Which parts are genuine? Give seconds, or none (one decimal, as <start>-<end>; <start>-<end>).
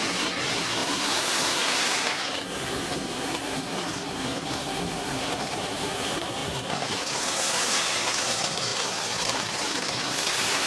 none